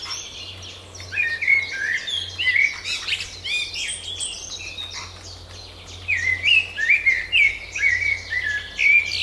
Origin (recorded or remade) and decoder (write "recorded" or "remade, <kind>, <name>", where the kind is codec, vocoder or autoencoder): recorded